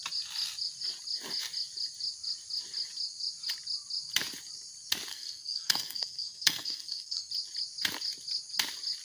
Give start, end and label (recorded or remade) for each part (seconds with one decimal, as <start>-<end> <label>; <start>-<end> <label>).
0.0-5.1 recorded; 5.1-7.3 remade; 7.3-9.0 recorded